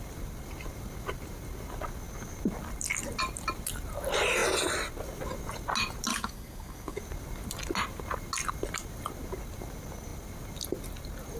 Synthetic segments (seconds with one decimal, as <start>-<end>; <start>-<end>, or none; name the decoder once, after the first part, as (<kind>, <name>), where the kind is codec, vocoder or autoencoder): 6.1-7.0 (codec, DAC)